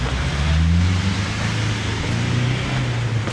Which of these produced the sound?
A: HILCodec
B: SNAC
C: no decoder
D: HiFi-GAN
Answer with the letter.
C